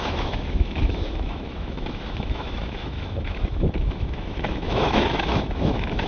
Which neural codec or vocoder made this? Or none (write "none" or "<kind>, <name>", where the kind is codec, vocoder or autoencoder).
autoencoder, DAC-VAE